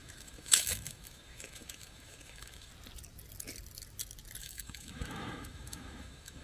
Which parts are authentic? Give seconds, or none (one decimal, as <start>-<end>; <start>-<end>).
2.7-4.4